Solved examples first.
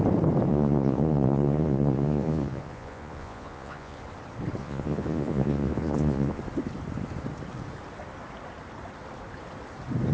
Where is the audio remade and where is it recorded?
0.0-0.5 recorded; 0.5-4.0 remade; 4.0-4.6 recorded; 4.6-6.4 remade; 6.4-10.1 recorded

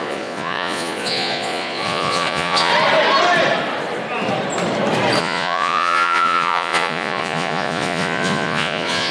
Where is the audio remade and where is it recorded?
0.0-2.7 remade; 2.7-5.2 recorded; 5.2-9.1 remade

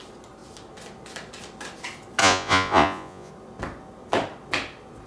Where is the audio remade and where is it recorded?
0.0-2.2 recorded; 2.2-3.3 remade; 3.3-5.1 recorded

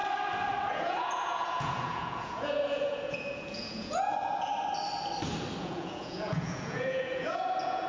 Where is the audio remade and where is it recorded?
0.0-0.7 recorded; 0.7-4.5 remade; 4.5-5.6 recorded; 5.6-7.9 remade

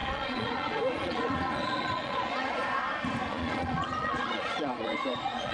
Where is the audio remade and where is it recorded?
0.0-2.6 remade; 2.6-3.3 recorded; 3.3-5.5 remade

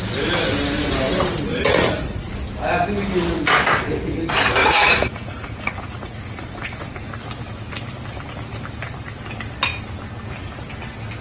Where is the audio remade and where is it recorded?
0.0-1.5 recorded; 1.5-2.3 remade; 2.3-4.6 recorded; 4.6-7.1 remade; 7.1-11.2 recorded

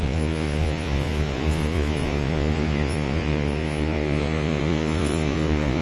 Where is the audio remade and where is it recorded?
0.0-5.8 remade

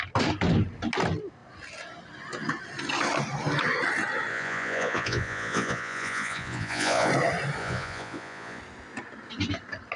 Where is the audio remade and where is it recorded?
0.0-4.3 recorded; 4.3-7.1 remade; 7.1-7.6 recorded; 7.6-8.6 remade; 8.6-10.0 recorded